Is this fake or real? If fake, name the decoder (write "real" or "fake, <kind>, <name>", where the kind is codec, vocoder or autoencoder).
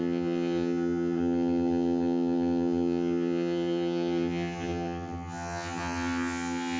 fake, vocoder, HiFi-GAN